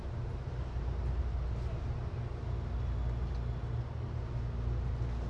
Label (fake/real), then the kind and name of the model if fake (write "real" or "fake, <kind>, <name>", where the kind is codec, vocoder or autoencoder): real